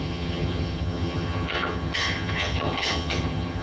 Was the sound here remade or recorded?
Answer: remade